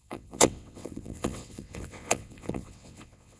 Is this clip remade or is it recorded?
remade